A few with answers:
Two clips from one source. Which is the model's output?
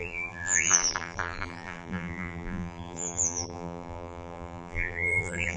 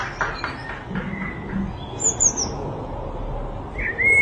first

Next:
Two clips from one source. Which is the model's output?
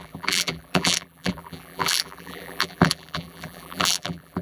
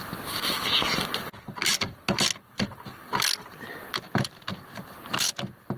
first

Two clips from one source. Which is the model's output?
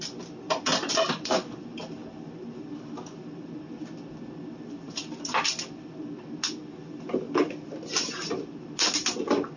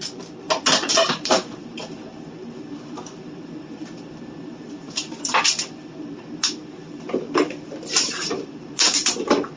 second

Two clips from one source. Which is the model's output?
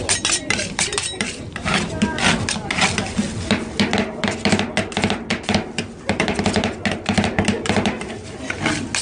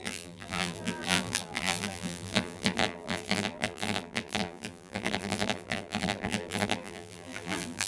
second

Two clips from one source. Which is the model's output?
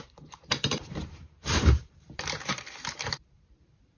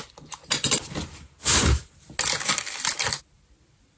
first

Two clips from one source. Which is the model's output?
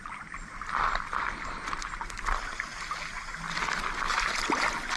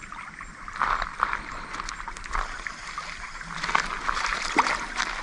second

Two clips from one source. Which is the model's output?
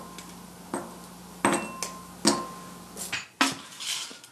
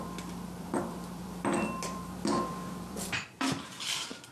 second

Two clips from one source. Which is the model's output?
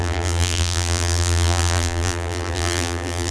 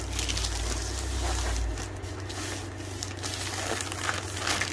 first